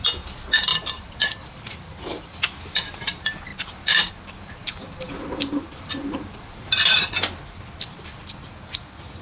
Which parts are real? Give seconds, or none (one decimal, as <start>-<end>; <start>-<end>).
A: 0.0-0.7; 2.4-4.6; 7.3-9.2